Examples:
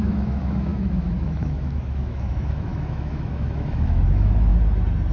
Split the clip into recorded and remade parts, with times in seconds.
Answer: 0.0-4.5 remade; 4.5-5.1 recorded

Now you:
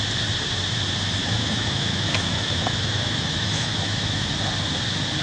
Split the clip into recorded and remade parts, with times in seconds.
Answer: 0.0-1.2 recorded; 1.2-4.3 remade; 4.3-5.2 recorded

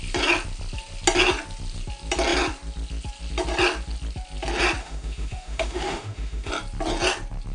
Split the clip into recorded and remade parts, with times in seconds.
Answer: 0.0-4.8 recorded; 4.8-6.5 remade; 6.5-7.5 recorded